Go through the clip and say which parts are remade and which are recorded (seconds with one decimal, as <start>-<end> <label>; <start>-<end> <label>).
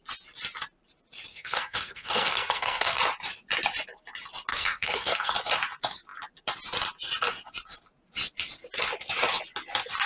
0.0-1.3 recorded; 1.3-3.0 remade; 3.0-4.5 recorded; 4.5-5.3 remade; 5.3-10.1 recorded